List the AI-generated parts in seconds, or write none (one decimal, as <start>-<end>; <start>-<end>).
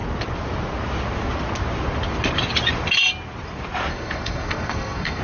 3.9-5.2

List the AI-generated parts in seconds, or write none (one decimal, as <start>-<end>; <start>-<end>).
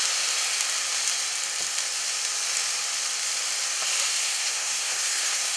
4.2-5.6